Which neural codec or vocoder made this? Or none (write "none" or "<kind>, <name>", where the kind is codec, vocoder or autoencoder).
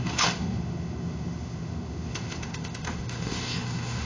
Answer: autoencoder, DAC-VAE